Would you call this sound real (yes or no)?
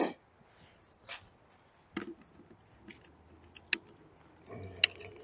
yes